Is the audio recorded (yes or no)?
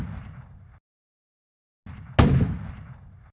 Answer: yes